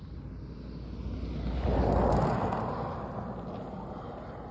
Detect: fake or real real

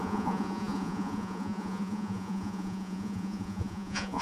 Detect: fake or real fake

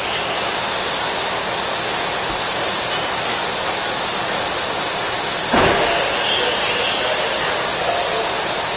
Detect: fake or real real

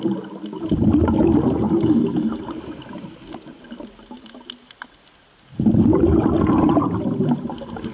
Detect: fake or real real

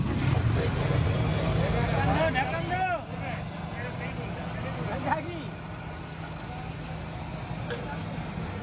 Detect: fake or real real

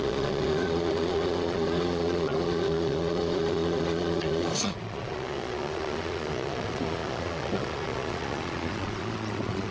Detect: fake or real fake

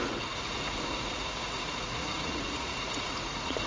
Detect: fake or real fake